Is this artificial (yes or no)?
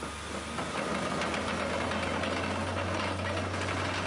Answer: no